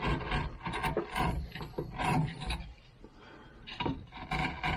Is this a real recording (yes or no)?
yes